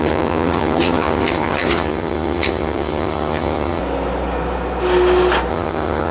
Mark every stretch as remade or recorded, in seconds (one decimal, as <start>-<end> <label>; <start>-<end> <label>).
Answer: 0.0-3.8 remade; 3.8-5.5 recorded; 5.5-6.1 remade